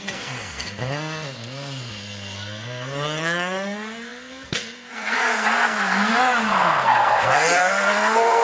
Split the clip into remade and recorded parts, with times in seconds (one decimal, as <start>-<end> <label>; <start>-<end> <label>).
0.0-8.4 remade